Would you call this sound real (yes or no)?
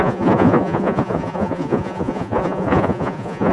no